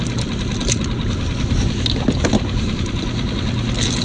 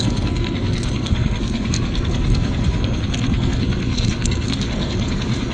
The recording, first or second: first